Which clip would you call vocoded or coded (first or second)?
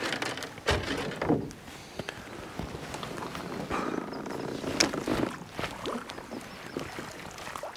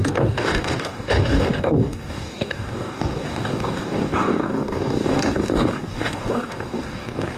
second